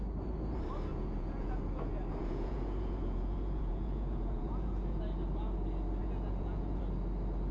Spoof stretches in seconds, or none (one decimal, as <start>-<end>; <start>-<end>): 0.9-1.6; 2.2-5.0; 6.0-6.8